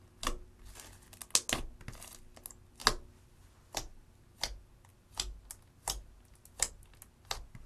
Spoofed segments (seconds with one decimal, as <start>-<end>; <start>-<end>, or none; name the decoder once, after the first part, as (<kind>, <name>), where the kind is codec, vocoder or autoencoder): none